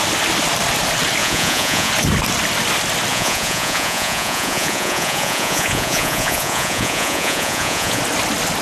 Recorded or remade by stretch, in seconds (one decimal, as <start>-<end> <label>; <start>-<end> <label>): 0.0-1.2 recorded; 1.2-1.9 remade; 1.9-3.1 recorded; 3.1-8.0 remade; 8.0-8.6 recorded